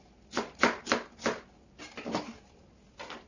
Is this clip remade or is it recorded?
recorded